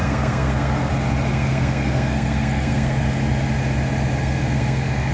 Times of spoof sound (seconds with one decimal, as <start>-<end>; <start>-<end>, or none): 0.0-0.9; 1.3-3.0; 4.2-5.1